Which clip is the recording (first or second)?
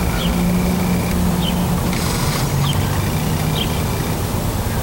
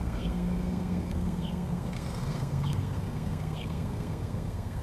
first